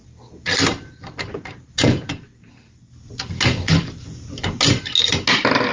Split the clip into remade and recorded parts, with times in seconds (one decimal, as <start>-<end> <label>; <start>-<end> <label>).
0.0-5.7 recorded